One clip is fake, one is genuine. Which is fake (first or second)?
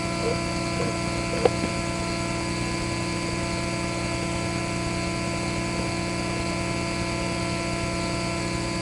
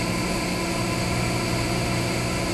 second